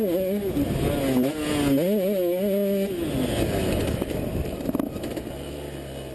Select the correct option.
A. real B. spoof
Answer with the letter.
A